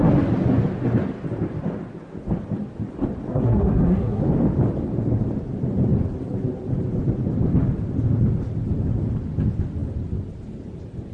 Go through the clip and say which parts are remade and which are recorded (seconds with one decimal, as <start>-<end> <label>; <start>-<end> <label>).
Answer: 0.0-3.3 recorded; 3.3-4.2 remade; 4.2-11.1 recorded